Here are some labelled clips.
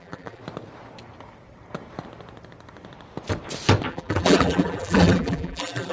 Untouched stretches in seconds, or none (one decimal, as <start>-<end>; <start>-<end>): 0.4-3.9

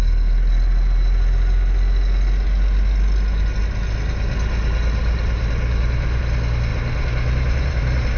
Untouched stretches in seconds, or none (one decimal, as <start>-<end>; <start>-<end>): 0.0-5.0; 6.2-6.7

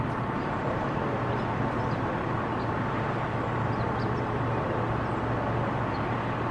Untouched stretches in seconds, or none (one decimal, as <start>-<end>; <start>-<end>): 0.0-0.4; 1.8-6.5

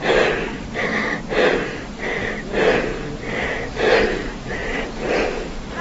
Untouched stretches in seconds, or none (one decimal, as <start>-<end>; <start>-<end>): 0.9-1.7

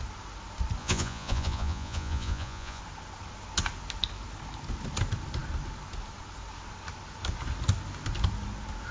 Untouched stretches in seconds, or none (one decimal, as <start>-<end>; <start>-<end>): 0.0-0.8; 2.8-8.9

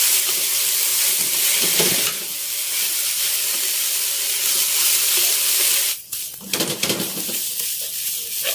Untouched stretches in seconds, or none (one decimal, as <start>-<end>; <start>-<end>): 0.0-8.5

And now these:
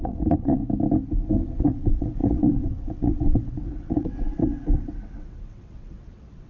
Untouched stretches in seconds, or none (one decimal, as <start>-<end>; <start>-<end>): 0.6-1.6